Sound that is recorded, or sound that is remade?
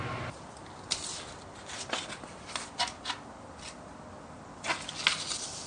recorded